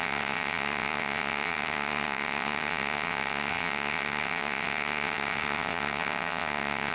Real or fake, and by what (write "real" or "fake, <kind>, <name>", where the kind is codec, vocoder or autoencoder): fake, vocoder, WaveNeXt